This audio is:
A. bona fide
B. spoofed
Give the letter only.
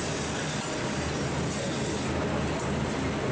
A